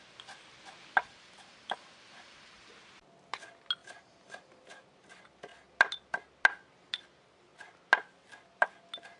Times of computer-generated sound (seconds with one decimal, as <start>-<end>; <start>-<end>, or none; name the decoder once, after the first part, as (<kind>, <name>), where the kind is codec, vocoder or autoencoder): 1.0-2.7 (vocoder, BigVGAN v2); 3.8-4.4